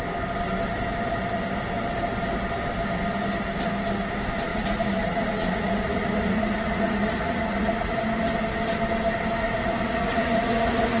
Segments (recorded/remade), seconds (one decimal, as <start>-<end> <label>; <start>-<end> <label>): 0.0-4.5 recorded; 4.5-8.0 remade; 8.0-9.4 recorded; 9.4-11.0 remade